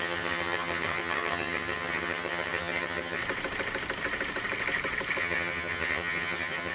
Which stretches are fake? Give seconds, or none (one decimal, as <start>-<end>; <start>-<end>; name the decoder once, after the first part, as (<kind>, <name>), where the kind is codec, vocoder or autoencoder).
0.0-3.2 (vocoder, HiFi-GAN); 5.2-6.7